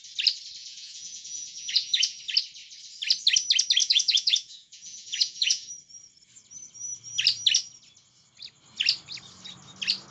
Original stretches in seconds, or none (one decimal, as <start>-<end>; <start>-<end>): 0.0-0.6; 2.2-3.8; 5.7-10.1